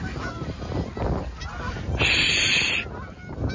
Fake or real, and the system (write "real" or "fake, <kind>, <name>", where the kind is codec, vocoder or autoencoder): real